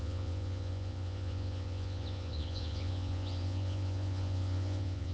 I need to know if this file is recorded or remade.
remade